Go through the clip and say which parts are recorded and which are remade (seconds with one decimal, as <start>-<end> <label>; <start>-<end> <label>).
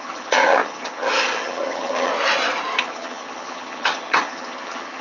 0.0-2.1 remade; 2.1-2.8 recorded; 2.8-5.0 remade